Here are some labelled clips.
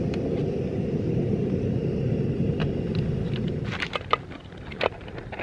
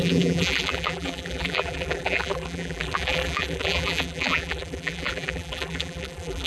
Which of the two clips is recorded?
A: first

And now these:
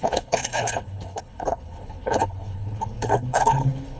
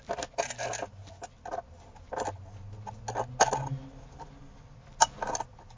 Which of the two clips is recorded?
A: second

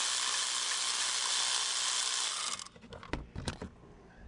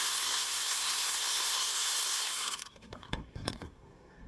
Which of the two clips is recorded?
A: first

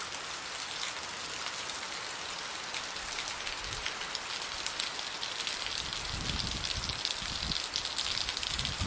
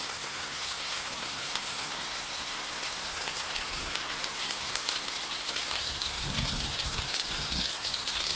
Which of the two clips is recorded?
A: first